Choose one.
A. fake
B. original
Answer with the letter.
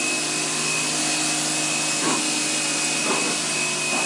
B